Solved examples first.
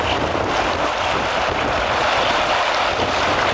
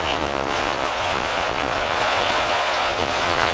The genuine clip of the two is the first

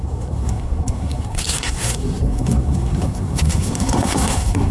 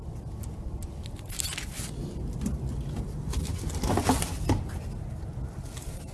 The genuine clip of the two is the second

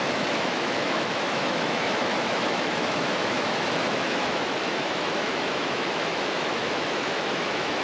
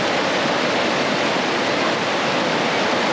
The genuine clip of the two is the second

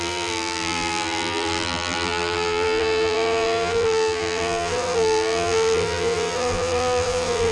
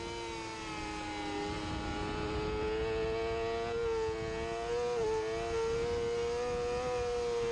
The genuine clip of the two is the second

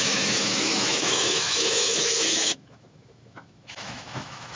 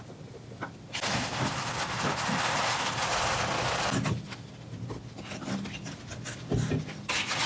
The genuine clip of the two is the second